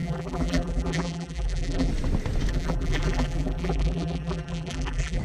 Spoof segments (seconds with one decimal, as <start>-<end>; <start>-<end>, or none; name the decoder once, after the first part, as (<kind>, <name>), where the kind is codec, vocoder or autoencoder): 0.0-1.9 (vocoder, BigVGAN v2); 2.5-5.2